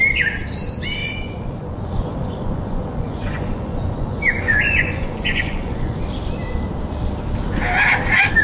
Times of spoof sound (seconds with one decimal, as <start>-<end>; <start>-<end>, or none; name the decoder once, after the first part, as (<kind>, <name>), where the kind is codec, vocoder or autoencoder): 1.0-6.0 (vocoder, Vocos)